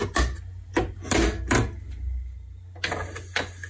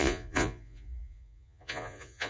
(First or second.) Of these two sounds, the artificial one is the second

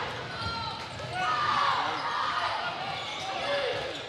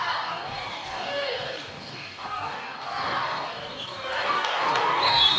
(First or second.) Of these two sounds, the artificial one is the second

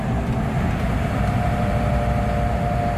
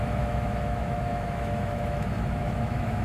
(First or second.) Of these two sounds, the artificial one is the second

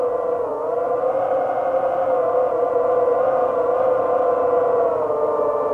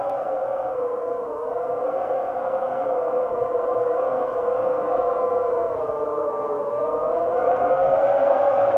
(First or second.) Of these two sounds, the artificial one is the second